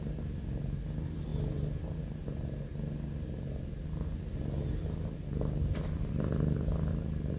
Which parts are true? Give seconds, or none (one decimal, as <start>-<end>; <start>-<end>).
0.0-7.4